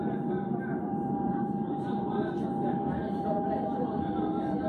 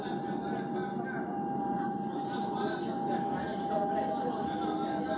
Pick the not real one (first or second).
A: first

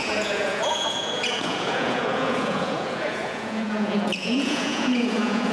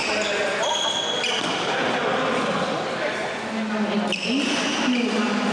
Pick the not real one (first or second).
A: first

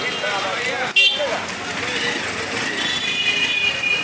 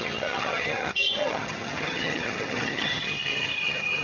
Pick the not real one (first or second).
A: second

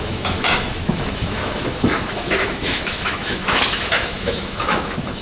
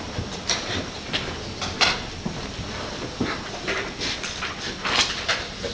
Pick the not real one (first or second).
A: first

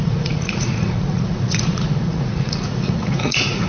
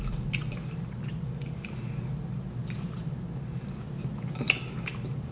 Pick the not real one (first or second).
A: first